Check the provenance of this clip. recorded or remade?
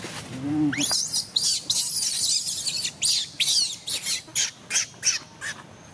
recorded